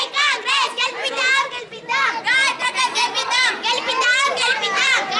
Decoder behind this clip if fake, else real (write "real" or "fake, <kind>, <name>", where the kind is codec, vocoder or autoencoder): fake, vocoder, BigVGAN v2